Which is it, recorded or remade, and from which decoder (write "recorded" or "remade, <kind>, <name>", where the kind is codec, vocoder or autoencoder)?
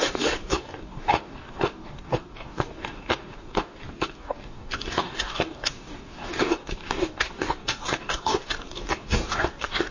remade, codec, DAC